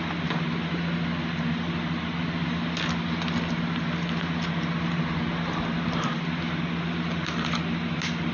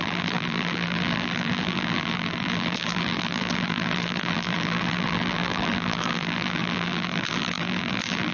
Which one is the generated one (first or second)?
second